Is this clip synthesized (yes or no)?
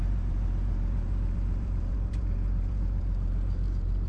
yes